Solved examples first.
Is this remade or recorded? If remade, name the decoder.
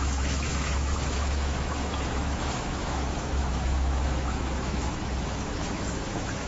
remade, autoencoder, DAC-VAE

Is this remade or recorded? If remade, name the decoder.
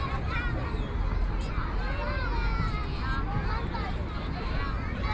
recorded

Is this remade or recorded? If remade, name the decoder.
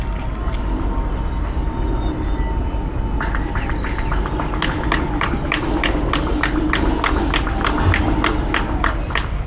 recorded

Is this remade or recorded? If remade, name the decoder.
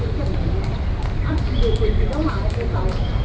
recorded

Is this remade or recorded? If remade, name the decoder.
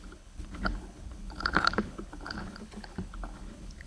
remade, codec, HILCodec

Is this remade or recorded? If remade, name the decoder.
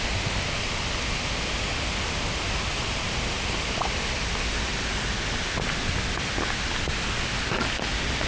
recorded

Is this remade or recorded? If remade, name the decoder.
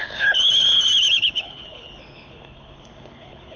remade, codec, HILCodec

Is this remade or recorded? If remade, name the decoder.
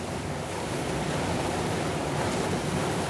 recorded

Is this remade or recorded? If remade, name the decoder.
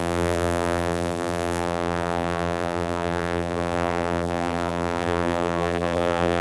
remade, vocoder, BigVGAN v2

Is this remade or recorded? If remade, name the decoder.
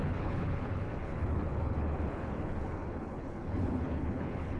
remade, codec, HILCodec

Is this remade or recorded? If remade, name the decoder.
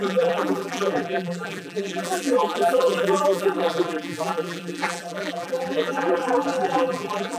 remade, vocoder, BigVGAN v2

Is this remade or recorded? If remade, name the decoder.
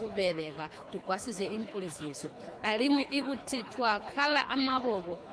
remade, codec, HILCodec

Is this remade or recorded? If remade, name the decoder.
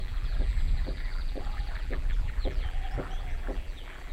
remade, vocoder, BigVGAN v2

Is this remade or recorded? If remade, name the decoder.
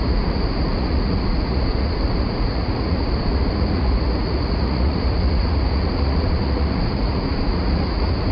remade, vocoder, Vocos